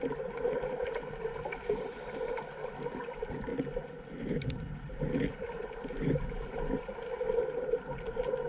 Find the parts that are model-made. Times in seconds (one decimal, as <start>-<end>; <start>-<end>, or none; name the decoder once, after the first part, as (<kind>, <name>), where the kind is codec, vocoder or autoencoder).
none